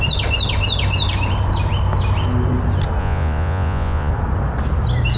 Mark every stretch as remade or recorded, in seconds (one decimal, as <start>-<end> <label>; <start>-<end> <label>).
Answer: 0.0-3.0 recorded; 3.0-4.1 remade; 4.1-5.2 recorded